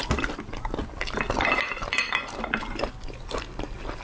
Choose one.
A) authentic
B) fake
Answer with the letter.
A